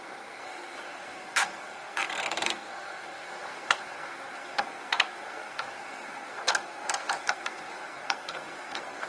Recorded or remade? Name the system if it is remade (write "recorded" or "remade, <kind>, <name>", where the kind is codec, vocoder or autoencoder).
remade, codec, SNAC